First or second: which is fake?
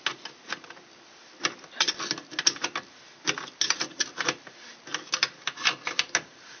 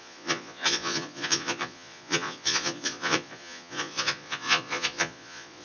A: second